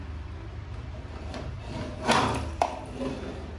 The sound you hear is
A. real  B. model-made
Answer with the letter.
B